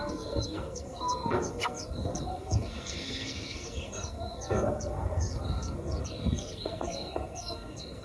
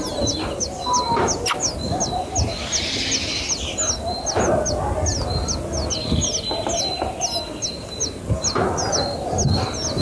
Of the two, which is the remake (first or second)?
first